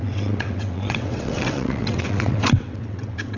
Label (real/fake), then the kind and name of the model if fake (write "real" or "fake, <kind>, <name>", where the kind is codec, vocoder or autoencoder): fake, vocoder, WaveNeXt